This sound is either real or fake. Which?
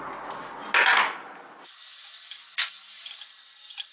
real